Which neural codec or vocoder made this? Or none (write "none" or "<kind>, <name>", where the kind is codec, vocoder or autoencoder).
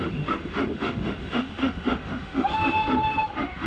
autoencoder, DAC-VAE